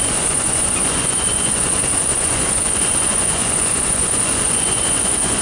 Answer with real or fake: fake